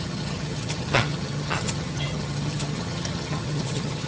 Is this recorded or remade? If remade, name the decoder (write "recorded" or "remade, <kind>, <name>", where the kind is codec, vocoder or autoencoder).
remade, vocoder, HiFi-GAN